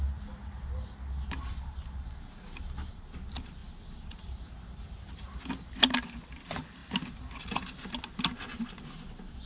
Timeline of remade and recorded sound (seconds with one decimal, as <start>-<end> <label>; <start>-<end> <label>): 0.0-1.5 recorded; 1.5-2.9 remade; 2.9-9.5 recorded